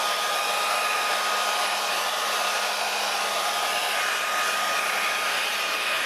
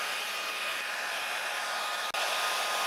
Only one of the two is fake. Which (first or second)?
first